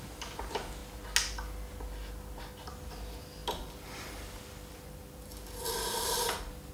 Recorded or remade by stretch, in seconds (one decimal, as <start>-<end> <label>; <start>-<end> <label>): 0.0-3.4 recorded; 3.4-6.7 remade